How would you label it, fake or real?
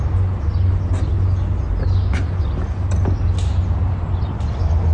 real